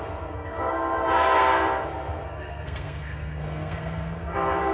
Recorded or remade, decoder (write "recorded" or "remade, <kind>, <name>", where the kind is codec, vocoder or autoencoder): remade, codec, SNAC